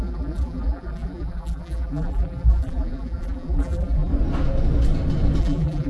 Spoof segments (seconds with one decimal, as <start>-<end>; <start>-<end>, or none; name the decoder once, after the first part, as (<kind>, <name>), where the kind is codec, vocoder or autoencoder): 0.0-4.1 (vocoder, BigVGAN v2); 5.4-5.9